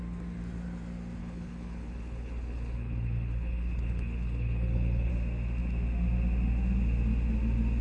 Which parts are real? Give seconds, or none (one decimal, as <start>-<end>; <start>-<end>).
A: 0.0-1.2; 5.1-7.8